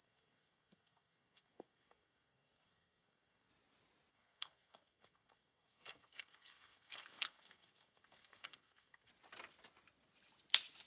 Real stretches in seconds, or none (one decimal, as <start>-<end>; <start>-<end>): 3.5-4.1; 9.1-10.9